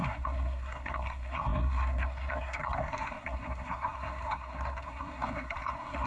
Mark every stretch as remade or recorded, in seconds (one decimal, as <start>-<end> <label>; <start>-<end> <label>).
0.0-6.1 remade